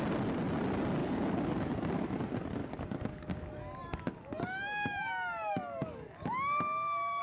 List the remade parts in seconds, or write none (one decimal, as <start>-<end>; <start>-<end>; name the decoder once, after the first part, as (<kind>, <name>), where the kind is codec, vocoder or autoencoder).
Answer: 1.0-2.2 (codec, DAC); 2.6-7.2